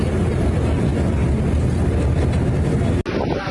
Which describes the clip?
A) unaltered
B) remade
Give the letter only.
A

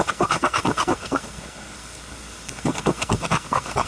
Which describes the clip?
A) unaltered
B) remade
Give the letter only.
B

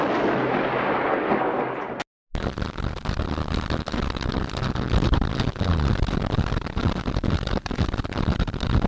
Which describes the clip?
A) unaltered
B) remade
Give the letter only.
A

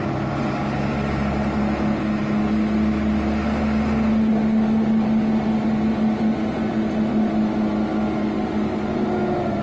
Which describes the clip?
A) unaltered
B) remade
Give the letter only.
A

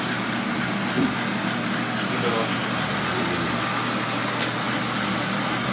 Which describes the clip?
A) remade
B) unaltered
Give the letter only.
B